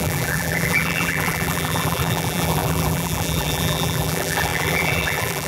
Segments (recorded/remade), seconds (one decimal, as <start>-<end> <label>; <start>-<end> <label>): 0.0-5.5 remade